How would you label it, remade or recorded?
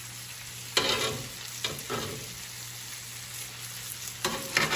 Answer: recorded